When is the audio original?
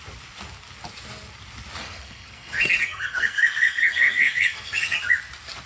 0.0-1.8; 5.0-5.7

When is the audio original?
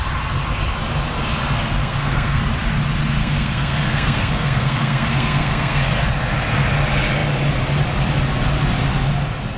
0.0-1.8; 2.4-3.2; 5.8-9.6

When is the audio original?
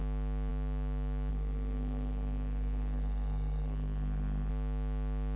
0.0-1.3; 4.5-5.4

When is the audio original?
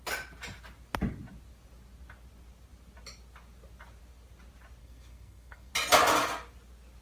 0.0-4.8; 5.7-7.0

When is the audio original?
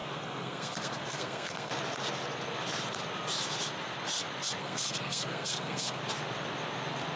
1.7-4.6; 6.0-7.2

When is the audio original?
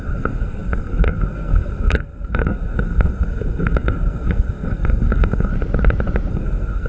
5.5-6.3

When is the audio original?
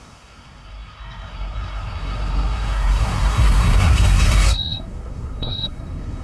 none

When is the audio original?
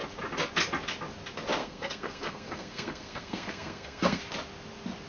0.0-1.6; 4.2-5.1